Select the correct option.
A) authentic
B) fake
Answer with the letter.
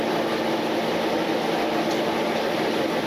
A